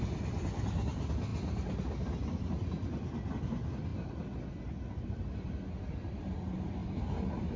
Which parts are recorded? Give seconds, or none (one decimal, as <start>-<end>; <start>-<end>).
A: 0.0-7.6